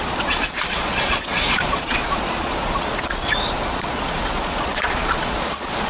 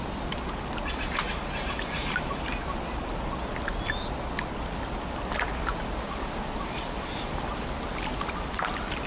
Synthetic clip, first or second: first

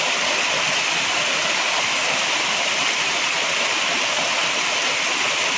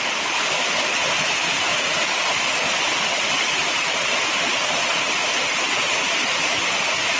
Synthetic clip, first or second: first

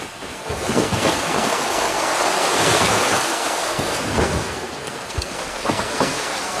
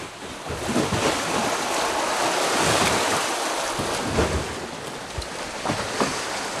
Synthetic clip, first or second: first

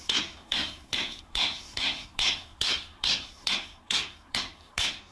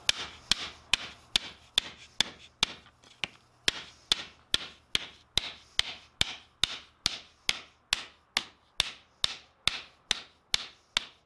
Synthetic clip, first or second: first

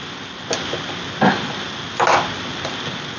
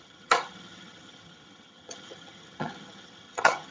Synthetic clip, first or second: second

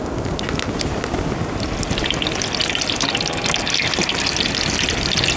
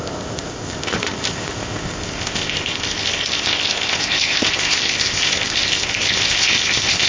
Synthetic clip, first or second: second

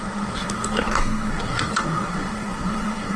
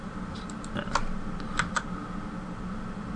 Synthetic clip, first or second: first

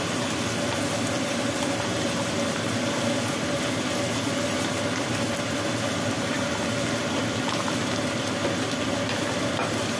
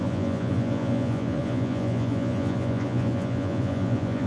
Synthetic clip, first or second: second